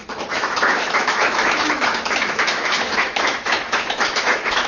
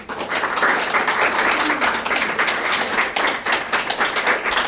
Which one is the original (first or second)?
second